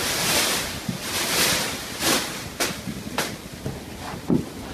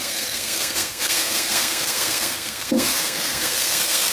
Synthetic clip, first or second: second